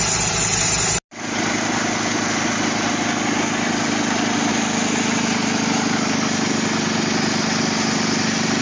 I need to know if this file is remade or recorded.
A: recorded